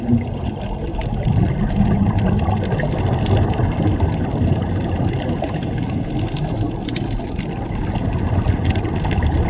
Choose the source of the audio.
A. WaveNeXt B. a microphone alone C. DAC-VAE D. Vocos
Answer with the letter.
B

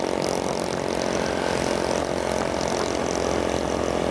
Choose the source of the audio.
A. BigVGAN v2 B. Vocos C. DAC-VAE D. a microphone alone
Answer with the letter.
D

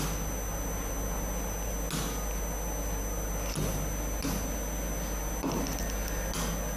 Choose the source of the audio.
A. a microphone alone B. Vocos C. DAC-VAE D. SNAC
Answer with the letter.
A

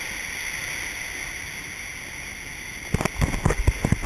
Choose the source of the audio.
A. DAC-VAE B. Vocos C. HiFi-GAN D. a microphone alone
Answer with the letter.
D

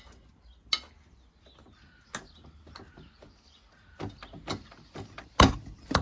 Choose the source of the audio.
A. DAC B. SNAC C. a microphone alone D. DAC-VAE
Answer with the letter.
C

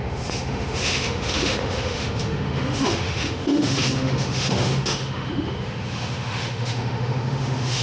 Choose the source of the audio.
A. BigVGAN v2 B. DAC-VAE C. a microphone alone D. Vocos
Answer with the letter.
B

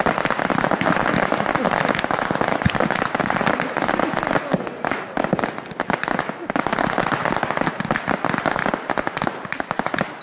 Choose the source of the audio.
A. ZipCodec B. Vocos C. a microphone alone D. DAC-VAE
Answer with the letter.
C